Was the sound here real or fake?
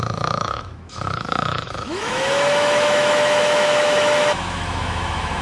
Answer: fake